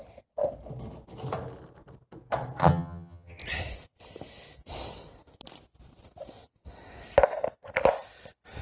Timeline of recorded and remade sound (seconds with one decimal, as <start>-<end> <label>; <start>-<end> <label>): 0.0-2.6 recorded; 2.6-3.4 remade; 3.4-8.6 recorded